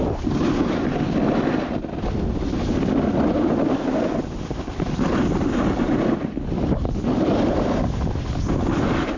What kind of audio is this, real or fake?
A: real